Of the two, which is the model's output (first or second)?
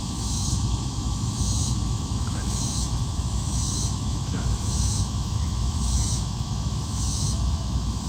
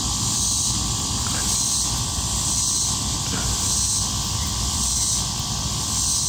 first